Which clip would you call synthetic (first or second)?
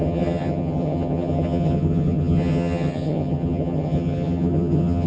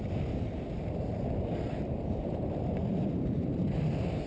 first